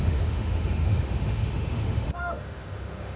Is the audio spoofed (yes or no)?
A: yes